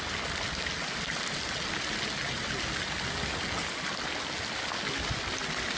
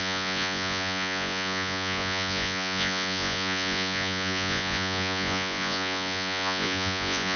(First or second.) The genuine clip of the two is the first